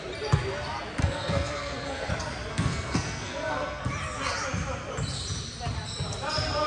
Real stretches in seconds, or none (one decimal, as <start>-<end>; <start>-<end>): 0.0-1.0; 2.1-2.5; 3.9-6.7